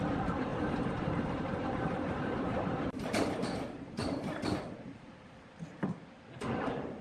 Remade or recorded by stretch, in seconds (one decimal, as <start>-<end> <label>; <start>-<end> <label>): 0.0-0.5 recorded; 0.5-4.6 remade; 4.6-7.0 recorded